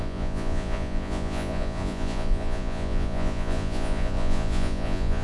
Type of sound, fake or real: fake